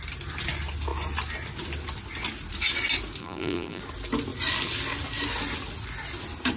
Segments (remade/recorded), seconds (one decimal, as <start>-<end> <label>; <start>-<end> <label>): 0.0-3.2 recorded; 3.2-3.8 remade; 3.8-6.6 recorded